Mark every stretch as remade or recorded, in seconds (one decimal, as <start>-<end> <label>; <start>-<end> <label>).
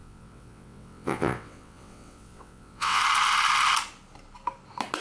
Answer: 0.0-3.0 remade; 3.0-5.0 recorded